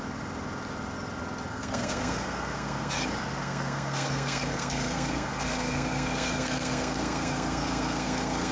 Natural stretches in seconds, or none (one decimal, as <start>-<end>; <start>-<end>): 0.0-1.5; 2.9-3.4